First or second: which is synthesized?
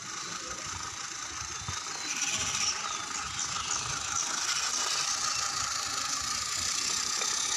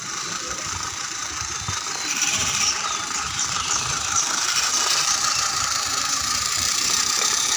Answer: second